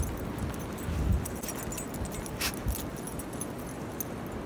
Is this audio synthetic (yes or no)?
no